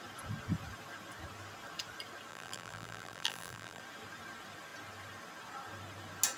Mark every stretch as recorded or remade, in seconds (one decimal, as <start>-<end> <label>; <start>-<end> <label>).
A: 0.0-2.3 recorded; 2.3-3.8 remade; 3.8-6.4 recorded